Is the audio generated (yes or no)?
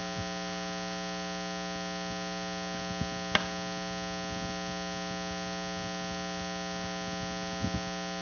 no